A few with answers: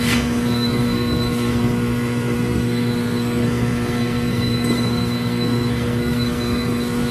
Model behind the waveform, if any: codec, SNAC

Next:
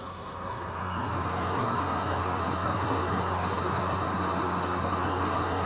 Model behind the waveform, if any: codec, SNAC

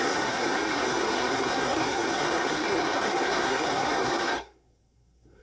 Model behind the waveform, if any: codec, SNAC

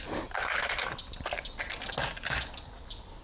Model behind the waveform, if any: none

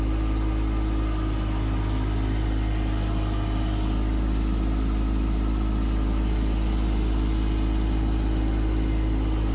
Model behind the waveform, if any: none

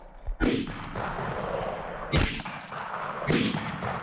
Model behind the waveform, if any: none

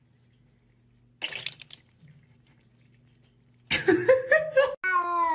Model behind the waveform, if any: none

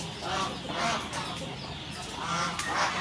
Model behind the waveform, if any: none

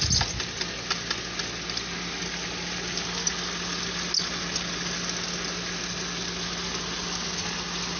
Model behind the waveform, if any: none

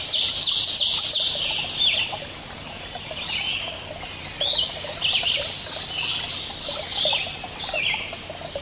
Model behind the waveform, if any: none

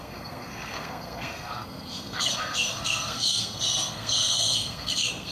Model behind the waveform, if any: codec, SNAC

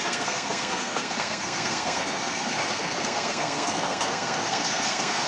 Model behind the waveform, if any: codec, SNAC